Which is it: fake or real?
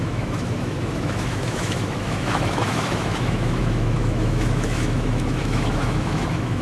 fake